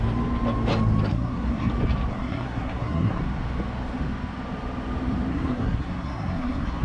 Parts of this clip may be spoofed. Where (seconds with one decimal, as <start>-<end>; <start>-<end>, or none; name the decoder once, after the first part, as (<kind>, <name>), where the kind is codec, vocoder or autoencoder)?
1.1-1.7 (codec, SNAC); 2.1-3.2; 5.3-6.8